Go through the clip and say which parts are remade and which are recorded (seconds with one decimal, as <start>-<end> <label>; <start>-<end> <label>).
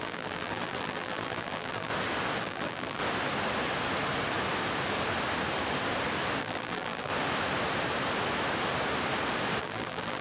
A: 0.0-1.9 remade; 1.9-2.4 recorded; 2.4-3.0 remade; 3.0-6.4 recorded; 6.4-7.1 remade; 7.1-9.6 recorded; 9.6-10.2 remade